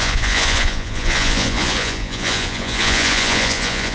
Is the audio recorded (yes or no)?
no